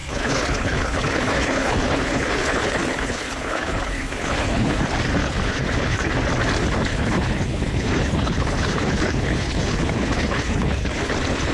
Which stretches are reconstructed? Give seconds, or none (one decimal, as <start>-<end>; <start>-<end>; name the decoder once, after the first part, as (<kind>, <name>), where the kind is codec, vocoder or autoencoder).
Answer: 0.0-4.8 (codec, HILCodec); 5.2-6.1; 6.9-11.1